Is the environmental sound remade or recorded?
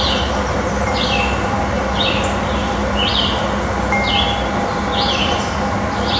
recorded